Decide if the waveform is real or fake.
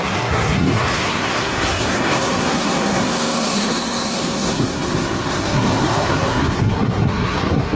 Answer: fake